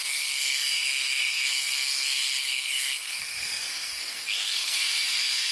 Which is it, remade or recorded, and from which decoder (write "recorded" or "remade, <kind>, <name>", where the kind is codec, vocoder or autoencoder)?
remade, codec, SNAC